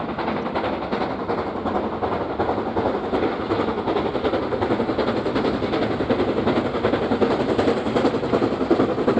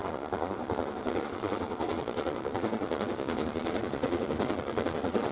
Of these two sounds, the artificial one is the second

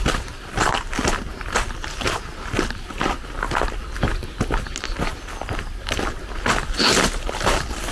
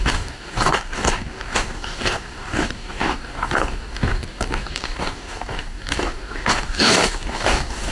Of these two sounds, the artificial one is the second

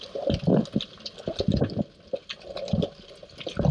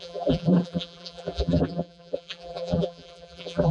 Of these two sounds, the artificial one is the second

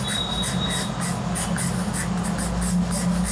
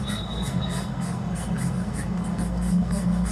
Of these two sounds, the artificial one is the second